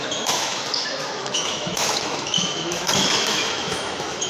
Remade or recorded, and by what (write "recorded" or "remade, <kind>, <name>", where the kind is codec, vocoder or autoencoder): remade, autoencoder, DAC-VAE